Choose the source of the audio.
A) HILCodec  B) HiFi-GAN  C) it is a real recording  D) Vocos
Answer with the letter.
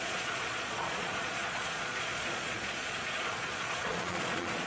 D